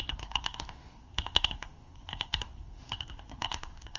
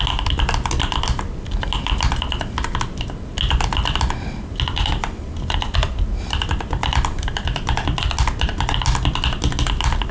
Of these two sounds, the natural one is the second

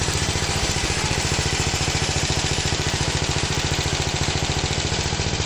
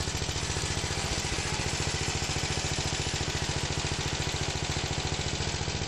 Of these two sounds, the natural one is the second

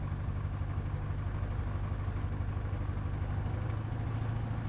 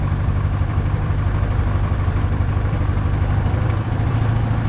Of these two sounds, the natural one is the first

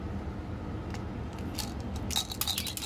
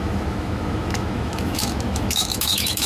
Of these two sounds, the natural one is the first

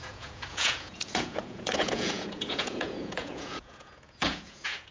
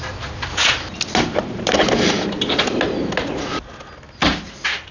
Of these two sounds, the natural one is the second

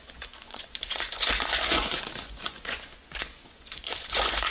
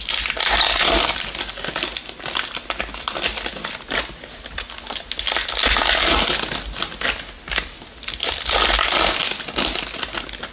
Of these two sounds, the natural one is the second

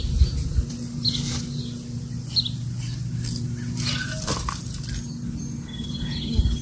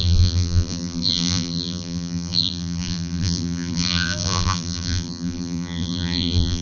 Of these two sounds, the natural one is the first